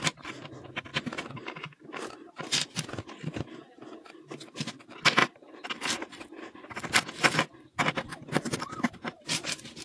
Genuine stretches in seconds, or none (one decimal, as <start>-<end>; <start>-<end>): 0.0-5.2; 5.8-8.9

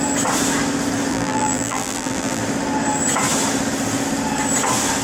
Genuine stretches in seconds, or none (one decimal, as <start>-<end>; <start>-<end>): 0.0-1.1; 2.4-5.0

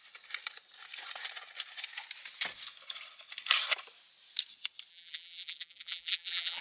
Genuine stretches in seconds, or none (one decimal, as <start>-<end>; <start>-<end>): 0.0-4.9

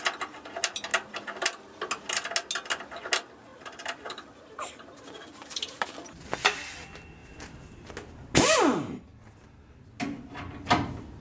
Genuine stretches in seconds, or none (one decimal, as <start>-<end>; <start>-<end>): 0.0-3.5; 5.9-7.2; 7.9-11.2